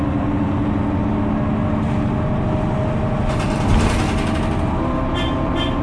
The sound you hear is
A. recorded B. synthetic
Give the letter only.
A